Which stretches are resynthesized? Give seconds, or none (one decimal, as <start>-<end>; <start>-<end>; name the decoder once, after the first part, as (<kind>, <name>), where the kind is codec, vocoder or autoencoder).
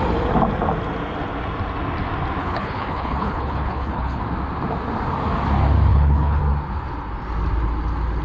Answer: 2.4-4.2 (codec, HILCodec); 5.9-6.4